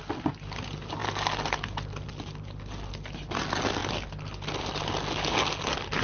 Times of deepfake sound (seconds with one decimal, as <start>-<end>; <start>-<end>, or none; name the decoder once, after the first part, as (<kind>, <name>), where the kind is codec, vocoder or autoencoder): none